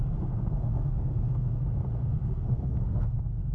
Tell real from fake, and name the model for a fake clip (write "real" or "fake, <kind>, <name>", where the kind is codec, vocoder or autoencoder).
fake, codec, SNAC